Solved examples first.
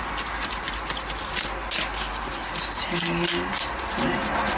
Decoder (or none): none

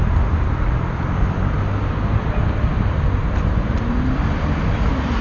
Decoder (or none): none